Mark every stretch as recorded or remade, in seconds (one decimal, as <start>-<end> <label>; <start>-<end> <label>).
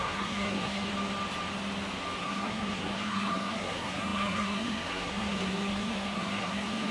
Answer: 0.0-0.9 remade; 0.9-2.2 recorded; 2.2-6.9 remade